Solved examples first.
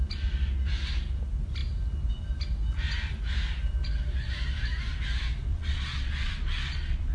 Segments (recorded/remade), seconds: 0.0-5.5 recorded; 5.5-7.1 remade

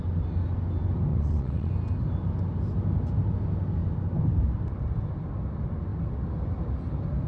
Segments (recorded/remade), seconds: 0.0-1.1 recorded; 1.1-1.7 remade; 1.7-7.3 recorded

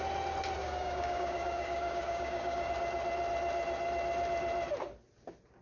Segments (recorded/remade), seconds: 0.0-0.6 recorded; 0.6-2.7 remade; 2.7-5.6 recorded

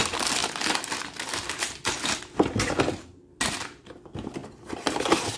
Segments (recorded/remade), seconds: 0.0-5.4 recorded